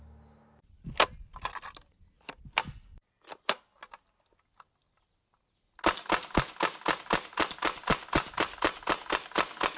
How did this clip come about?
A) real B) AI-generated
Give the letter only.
A